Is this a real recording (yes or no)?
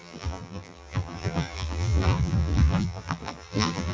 no